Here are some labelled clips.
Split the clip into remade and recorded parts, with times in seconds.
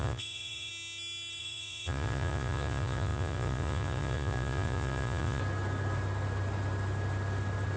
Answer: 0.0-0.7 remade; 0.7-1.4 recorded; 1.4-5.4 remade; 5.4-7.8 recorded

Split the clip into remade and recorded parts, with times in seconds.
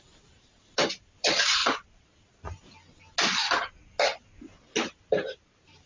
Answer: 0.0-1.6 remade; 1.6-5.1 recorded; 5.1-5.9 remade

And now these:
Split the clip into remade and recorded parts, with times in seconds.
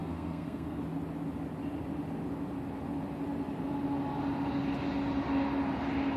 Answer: 0.0-0.8 remade; 0.8-6.2 recorded